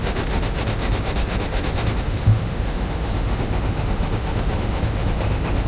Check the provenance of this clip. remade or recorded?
remade